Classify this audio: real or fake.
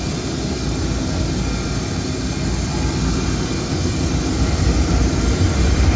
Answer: real